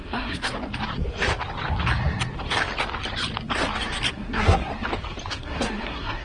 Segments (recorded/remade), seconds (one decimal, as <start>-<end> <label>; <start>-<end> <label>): 0.0-0.4 remade; 0.4-4.1 recorded; 4.1-4.7 remade; 4.7-5.3 recorded; 5.3-6.2 remade